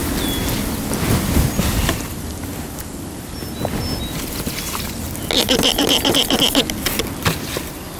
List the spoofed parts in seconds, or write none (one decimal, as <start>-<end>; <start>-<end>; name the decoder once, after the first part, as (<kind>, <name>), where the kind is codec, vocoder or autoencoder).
none